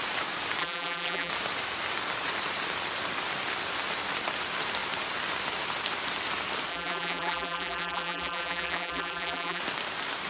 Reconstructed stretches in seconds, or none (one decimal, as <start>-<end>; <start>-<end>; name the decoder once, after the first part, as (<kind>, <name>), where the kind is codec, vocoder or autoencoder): 0.6-1.3 (vocoder, BigVGAN v2); 6.7-9.6